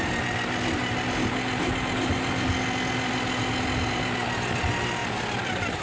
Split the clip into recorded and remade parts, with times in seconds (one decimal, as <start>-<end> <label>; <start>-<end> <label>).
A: 0.0-5.8 recorded